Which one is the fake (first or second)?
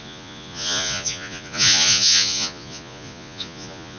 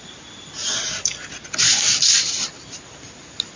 first